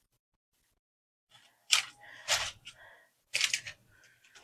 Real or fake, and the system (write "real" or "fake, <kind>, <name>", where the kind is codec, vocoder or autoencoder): fake, vocoder, BigVGAN v2